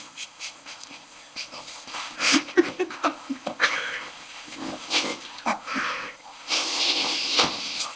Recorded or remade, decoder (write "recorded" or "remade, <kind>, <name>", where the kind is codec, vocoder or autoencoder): remade, codec, ZipCodec